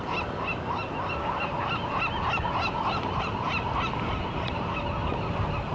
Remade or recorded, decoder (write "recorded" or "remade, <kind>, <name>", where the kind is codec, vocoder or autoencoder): recorded